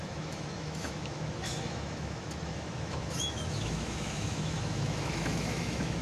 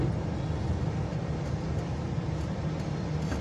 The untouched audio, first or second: second